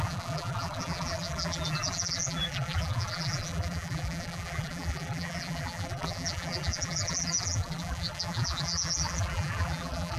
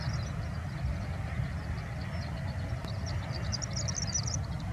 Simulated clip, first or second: first